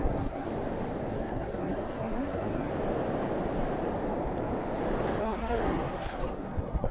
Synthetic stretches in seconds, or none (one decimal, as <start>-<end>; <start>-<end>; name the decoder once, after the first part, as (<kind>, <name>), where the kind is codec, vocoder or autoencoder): 0.0-0.5 (codec, SNAC); 1.1-2.7; 5.2-6.9